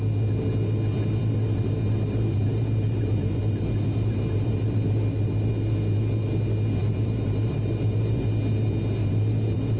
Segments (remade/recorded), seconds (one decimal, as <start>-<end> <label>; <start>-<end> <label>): 0.0-1.2 recorded; 1.2-5.5 remade; 5.5-6.8 recorded; 6.8-8.2 remade; 8.2-9.0 recorded; 9.0-9.8 remade